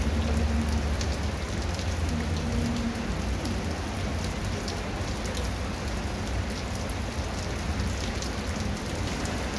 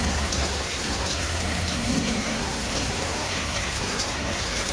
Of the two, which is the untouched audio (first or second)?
first